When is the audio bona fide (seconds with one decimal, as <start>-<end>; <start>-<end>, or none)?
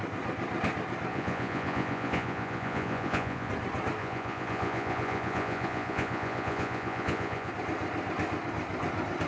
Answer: 0.0-1.1; 3.5-4.0; 7.5-9.3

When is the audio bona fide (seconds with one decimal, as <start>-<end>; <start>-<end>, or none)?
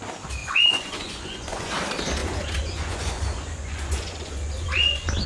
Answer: 0.0-0.4; 1.7-2.2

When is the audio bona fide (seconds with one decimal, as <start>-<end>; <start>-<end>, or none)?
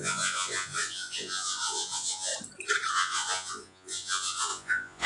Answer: 2.3-2.9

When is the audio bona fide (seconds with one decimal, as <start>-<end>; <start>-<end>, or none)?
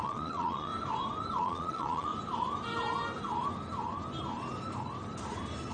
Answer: 0.7-1.4; 2.1-5.7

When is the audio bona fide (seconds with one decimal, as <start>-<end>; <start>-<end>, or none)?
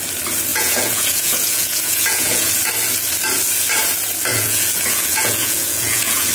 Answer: 0.0-0.5; 2.5-4.3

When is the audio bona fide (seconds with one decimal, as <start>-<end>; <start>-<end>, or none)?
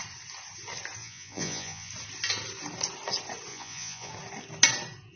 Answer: 0.0-1.0; 1.9-3.5; 4.1-5.2